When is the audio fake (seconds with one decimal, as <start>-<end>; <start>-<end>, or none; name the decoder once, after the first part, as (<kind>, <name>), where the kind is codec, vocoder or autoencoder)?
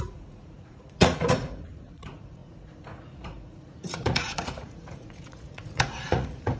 0.0-6.6 (vocoder, Vocos)